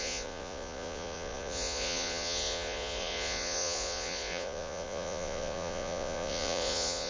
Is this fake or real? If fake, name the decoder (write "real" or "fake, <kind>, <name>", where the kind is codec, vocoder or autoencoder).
fake, vocoder, Vocos